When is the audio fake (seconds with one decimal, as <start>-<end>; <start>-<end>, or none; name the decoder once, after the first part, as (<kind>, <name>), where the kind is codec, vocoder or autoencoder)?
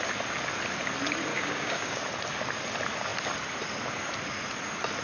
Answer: 1.3-2.0 (codec, DAC)